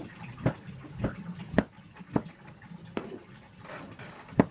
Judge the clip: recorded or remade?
recorded